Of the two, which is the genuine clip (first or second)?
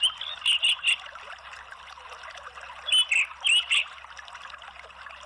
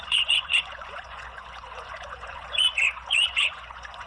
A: first